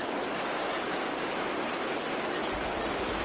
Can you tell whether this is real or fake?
real